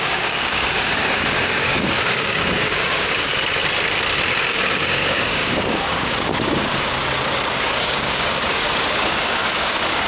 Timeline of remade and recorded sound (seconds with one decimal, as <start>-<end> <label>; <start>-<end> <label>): 0.0-3.3 remade; 3.3-4.5 recorded; 4.5-7.0 remade; 7.0-7.5 recorded; 7.5-10.1 remade